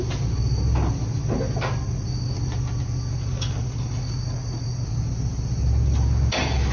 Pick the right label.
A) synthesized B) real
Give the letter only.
B